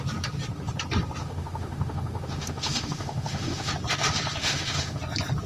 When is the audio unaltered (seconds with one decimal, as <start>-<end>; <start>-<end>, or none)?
0.0-1.2; 3.7-4.4; 5.0-5.5